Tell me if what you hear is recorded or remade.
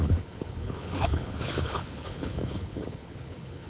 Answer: remade